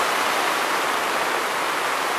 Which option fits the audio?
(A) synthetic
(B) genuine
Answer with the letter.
B